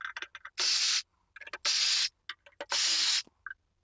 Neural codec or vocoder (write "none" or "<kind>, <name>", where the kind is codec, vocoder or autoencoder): none